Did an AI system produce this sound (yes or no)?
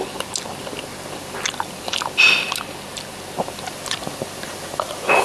no